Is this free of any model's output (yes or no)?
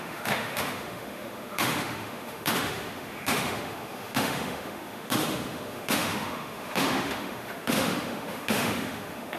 no